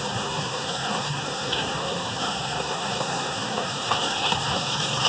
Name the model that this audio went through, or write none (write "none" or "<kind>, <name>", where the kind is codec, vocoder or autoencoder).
codec, SNAC